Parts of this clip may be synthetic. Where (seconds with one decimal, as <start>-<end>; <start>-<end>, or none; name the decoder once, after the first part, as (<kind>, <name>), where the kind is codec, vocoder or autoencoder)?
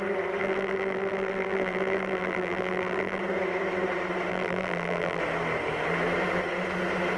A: 0.4-3.2 (vocoder, BigVGAN v2); 4.3-5.2